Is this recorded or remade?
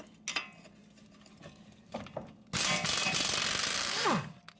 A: recorded